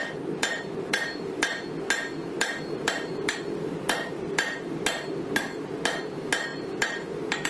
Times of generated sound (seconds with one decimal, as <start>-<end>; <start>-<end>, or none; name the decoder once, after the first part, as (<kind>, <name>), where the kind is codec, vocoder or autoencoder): 0.0-1.7 (vocoder, BigVGAN v2); 2.2-4.8; 6.5-7.5